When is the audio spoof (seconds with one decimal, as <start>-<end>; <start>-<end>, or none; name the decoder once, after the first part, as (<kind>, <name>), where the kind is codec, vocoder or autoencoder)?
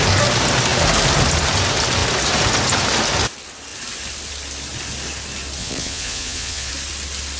5.6-6.7 (vocoder, Vocos)